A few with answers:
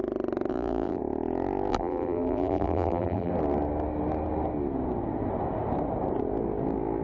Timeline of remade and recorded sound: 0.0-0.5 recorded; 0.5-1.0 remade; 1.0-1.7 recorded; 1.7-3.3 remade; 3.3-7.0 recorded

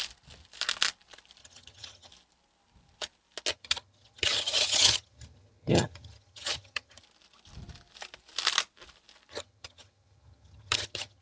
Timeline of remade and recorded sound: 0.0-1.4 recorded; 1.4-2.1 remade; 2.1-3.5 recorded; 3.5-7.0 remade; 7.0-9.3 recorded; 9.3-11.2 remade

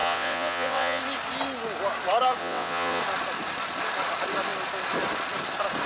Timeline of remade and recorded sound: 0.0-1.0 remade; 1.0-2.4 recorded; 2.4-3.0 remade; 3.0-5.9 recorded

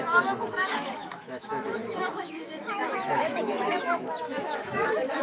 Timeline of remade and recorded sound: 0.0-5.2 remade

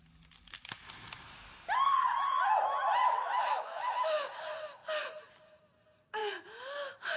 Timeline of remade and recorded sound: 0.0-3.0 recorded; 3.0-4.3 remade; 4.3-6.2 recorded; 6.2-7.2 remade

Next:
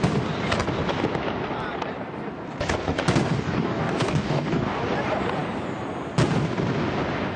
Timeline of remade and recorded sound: 0.0-3.3 recorded; 3.3-4.8 remade; 4.8-7.4 recorded

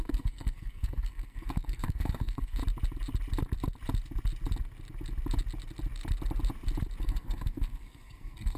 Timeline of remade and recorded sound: 0.0-2.6 remade; 2.6-7.0 recorded; 7.0-8.6 remade